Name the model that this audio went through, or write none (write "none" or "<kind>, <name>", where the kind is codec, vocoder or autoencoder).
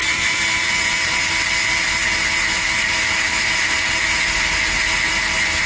none